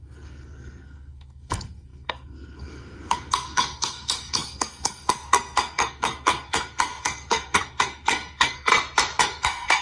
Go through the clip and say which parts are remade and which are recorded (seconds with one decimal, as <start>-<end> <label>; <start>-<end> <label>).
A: 0.0-8.7 remade; 8.7-9.2 recorded; 9.2-9.8 remade